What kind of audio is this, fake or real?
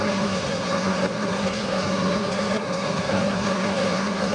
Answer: fake